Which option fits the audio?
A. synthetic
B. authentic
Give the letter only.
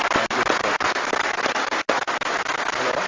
B